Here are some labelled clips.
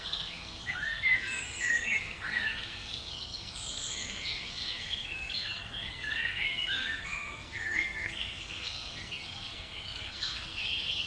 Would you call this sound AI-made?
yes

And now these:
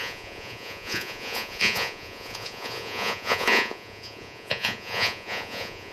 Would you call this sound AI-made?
yes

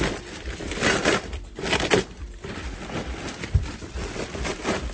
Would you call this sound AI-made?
yes